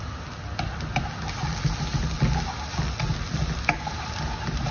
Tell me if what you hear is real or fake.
real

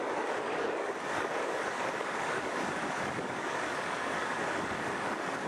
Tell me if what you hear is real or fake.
fake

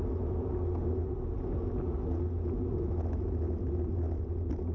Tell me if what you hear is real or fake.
real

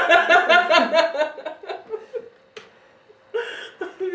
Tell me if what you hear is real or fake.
real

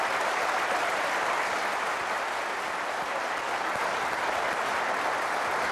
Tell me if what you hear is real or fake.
real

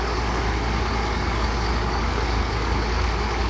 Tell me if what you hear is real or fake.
fake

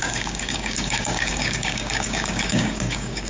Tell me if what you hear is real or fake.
fake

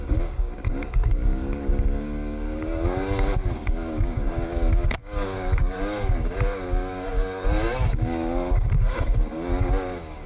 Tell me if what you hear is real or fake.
fake